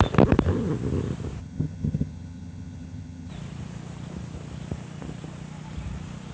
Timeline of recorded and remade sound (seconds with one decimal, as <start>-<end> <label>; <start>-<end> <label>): 0.0-1.4 recorded; 1.4-3.3 remade; 3.3-6.3 recorded